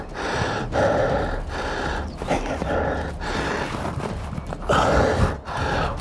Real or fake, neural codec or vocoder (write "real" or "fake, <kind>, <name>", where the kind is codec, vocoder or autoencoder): real